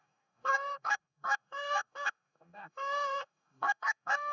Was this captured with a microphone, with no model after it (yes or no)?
no